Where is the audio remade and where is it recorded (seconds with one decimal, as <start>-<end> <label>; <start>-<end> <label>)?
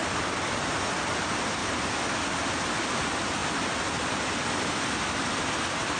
0.0-6.0 recorded